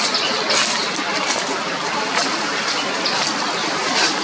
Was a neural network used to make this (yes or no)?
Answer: yes